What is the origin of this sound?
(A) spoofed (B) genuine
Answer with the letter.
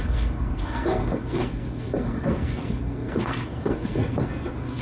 A